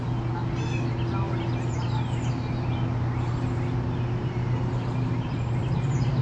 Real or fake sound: real